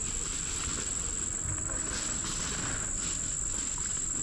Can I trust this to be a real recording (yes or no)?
yes